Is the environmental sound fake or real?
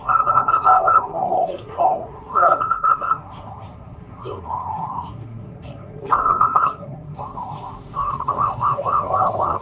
fake